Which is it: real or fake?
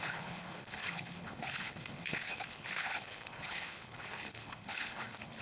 fake